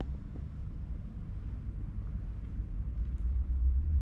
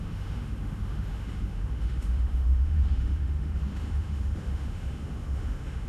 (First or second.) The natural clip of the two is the first